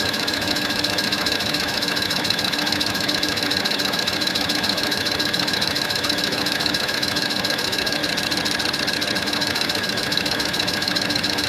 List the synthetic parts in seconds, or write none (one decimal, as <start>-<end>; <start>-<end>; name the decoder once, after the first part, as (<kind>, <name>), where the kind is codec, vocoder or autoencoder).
0.0-8.0 (autoencoder, DAC-VAE); 9.2-11.5